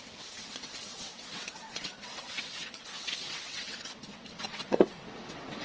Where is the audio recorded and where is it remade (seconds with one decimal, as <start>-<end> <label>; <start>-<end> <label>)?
0.0-5.6 remade